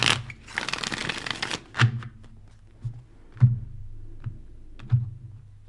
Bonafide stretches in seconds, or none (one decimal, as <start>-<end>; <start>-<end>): 0.0-5.7

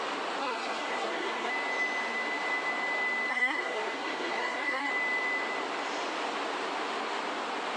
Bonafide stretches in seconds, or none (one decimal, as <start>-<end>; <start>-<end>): 0.0-0.4; 1.5-3.3; 4.9-7.8

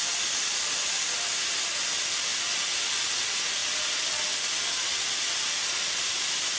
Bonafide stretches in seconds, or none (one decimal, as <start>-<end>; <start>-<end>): 0.0-6.6

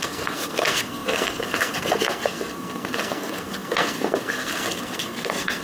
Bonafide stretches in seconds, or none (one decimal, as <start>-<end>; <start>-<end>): none

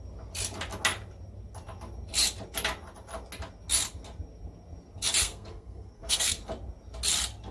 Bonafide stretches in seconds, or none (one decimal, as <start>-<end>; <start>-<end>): 0.0-5.2; 6.4-7.5

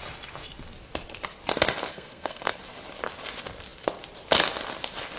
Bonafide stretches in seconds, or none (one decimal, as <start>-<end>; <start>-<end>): 0.0-1.9; 2.6-5.2

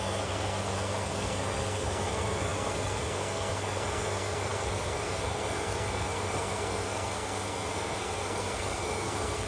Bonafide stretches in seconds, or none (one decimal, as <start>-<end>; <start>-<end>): none